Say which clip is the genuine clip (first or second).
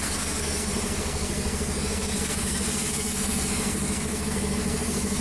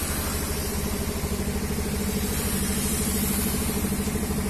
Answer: second